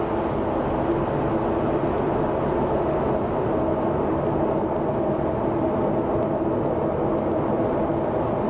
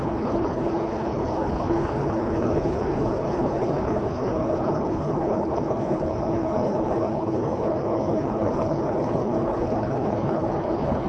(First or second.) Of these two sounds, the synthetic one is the second